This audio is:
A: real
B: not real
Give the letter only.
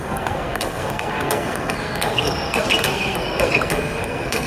B